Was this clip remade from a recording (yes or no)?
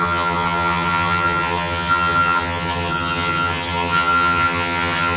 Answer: yes